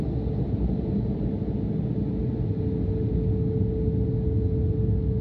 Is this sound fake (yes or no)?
no